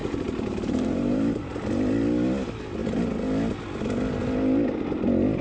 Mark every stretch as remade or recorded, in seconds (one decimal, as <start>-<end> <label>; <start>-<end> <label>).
0.0-1.5 remade; 1.5-5.4 recorded